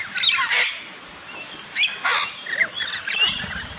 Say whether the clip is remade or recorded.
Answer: recorded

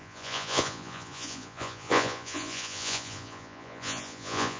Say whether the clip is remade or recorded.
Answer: remade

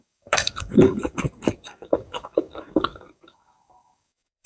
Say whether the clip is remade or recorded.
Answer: remade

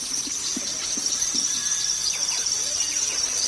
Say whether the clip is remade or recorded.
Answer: remade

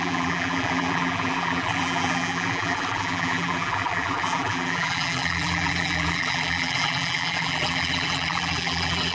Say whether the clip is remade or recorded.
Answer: remade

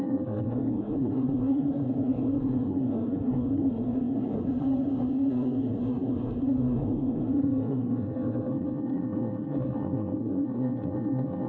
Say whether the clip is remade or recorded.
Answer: remade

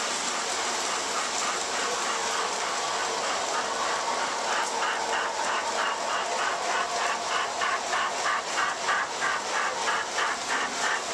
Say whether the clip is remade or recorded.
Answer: recorded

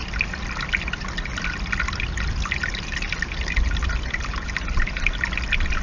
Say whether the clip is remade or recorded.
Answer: recorded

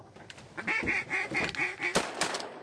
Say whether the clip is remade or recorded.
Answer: recorded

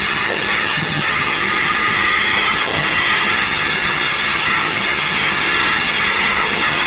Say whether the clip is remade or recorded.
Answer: remade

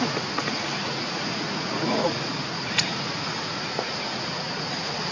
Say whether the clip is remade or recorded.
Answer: remade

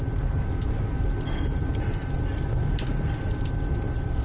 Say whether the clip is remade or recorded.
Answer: recorded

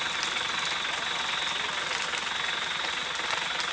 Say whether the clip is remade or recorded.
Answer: recorded